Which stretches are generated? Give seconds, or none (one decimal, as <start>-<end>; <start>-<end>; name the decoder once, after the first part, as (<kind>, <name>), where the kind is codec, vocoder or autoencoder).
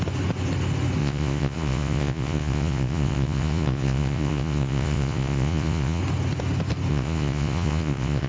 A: 1.0-6.0 (vocoder, Vocos); 6.9-8.3